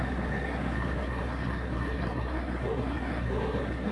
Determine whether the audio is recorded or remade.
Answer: remade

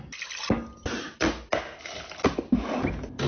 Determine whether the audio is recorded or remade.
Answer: recorded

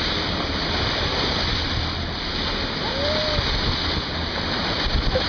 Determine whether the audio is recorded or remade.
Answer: recorded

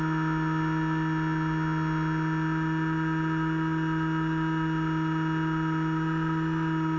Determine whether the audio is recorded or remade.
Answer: recorded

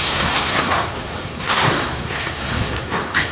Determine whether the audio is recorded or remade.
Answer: remade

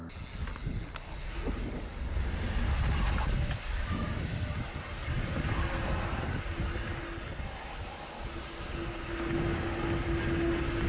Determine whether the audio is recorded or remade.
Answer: recorded